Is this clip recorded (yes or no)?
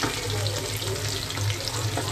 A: yes